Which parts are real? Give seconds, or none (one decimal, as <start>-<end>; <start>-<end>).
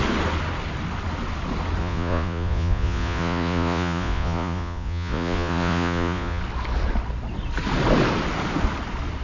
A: 0.0-1.8; 6.4-9.2